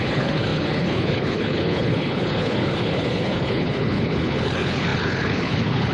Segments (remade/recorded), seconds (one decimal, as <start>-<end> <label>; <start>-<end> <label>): 0.0-5.9 remade